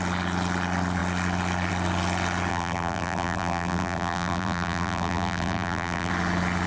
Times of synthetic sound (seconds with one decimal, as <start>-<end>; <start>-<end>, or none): 2.5-6.1